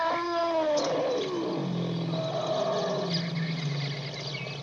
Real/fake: real